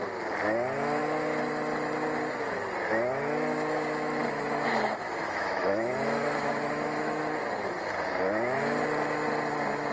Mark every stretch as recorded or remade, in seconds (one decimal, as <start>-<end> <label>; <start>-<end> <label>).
0.0-4.2 recorded; 4.2-7.2 remade; 7.2-9.9 recorded